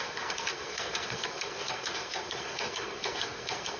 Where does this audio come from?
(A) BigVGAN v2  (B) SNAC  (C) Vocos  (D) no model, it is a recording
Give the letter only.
B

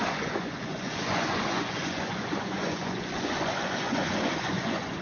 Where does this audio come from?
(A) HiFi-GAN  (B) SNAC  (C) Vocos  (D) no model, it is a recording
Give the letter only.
C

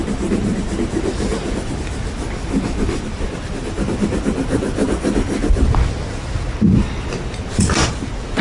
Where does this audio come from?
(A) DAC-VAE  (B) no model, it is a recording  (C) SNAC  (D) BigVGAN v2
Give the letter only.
B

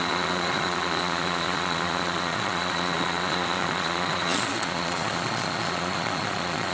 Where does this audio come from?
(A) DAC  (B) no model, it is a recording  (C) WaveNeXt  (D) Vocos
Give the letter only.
D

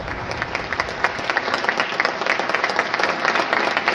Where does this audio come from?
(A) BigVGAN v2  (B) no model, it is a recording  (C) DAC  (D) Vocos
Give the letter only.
B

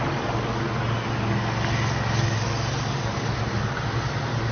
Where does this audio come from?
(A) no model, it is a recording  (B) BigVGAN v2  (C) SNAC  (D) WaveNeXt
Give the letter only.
A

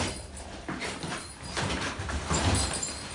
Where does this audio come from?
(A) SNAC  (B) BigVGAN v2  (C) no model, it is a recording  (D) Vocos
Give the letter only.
B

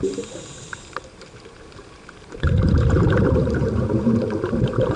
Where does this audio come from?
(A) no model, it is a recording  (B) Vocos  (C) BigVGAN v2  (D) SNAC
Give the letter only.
C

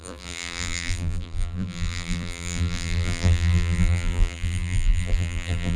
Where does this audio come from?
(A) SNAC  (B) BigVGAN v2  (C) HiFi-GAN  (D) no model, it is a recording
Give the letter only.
B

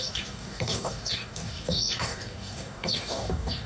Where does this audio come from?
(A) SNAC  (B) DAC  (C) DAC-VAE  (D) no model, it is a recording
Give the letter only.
B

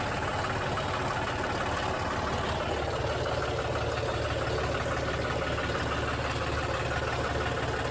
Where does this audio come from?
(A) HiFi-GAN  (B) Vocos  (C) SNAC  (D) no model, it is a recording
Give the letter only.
D